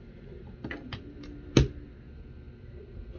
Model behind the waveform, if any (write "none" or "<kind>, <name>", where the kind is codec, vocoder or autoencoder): none